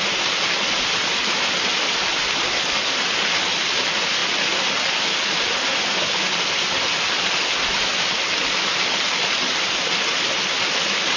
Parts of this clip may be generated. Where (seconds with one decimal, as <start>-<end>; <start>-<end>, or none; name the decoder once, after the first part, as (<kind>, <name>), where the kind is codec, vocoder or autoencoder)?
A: none